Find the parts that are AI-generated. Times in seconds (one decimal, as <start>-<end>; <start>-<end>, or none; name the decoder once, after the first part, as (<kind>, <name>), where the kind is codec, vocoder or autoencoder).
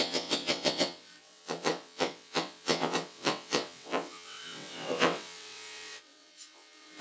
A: 0.0-7.0 (vocoder, WaveNeXt)